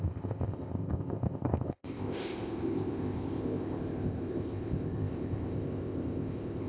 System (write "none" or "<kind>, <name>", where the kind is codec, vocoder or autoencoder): codec, ZipCodec